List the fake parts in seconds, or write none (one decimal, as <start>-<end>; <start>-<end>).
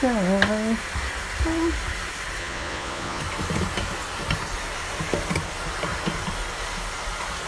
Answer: 2.4-3.2